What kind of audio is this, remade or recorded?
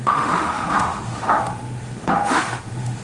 remade